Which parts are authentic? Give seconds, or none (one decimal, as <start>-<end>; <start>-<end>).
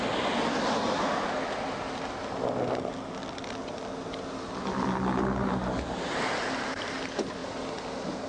0.0-8.3